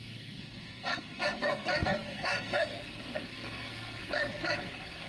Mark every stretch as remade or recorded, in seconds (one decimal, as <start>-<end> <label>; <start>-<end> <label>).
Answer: 0.0-5.1 remade